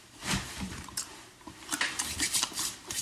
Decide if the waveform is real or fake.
fake